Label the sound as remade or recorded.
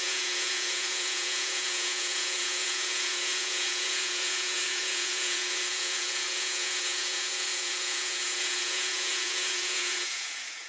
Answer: remade